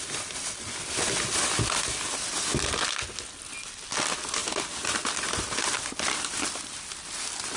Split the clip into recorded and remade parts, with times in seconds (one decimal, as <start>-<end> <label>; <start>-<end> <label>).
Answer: 0.0-7.6 recorded